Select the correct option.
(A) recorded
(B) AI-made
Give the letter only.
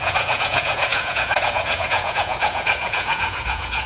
B